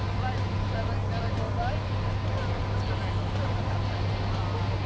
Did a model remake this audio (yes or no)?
no